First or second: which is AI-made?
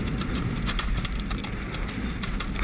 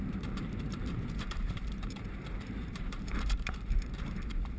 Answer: second